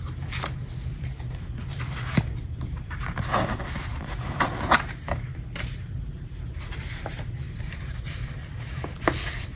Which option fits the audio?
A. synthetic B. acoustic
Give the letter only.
A